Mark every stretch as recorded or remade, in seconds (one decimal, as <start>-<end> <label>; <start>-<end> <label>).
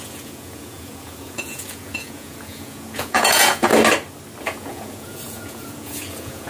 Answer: 0.0-3.7 remade; 3.7-4.4 recorded; 4.4-6.5 remade